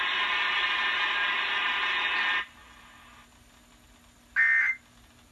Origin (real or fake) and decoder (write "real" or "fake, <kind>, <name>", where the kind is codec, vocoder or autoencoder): real